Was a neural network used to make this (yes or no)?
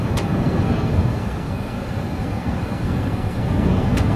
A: yes